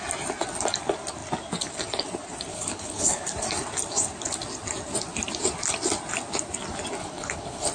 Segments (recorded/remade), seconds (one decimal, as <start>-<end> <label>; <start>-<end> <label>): 0.0-2.5 recorded; 2.5-3.2 remade; 3.2-7.0 recorded; 7.0-7.7 remade